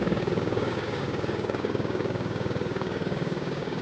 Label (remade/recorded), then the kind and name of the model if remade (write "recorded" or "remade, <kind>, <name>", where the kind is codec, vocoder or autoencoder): remade, codec, DAC